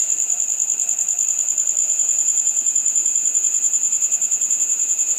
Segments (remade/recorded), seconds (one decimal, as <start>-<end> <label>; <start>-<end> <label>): 0.0-1.8 recorded; 1.8-5.2 remade